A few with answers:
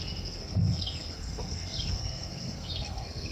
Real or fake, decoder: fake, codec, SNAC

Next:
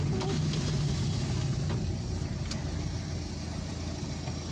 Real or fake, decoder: real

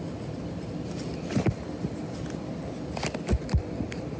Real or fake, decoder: real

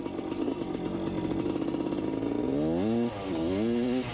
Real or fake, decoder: real